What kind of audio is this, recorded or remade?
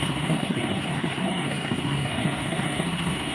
remade